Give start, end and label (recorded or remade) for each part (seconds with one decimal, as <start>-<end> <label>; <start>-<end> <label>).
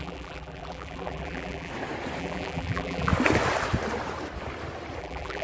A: 0.0-1.7 remade; 1.7-2.2 recorded; 2.2-3.1 remade; 3.1-5.0 recorded; 5.0-5.4 remade